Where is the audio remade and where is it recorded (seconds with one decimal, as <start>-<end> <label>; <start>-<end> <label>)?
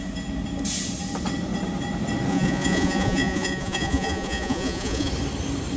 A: 0.0-2.3 recorded; 2.3-5.1 remade; 5.1-5.8 recorded